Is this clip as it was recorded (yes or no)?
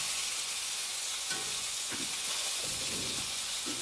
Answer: no